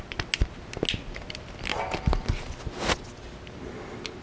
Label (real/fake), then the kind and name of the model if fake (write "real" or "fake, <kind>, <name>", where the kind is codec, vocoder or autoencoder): real